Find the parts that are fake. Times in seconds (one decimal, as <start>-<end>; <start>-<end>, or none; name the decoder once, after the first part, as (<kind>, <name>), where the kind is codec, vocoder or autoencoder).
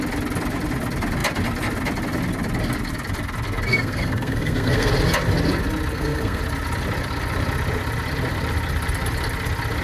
3.7-4.9 (codec, SNAC); 5.9-6.4